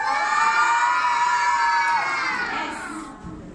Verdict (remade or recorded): recorded